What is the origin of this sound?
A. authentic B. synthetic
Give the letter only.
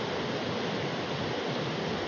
A